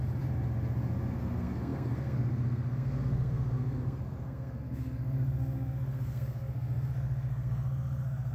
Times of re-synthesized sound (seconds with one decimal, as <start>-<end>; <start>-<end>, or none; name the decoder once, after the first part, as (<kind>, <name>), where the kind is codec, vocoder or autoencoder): 1.1-8.3 (codec, SNAC)